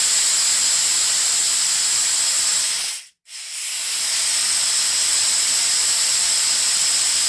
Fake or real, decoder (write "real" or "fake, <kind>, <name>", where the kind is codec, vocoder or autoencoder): real